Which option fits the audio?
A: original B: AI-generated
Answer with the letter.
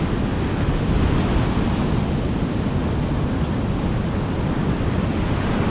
A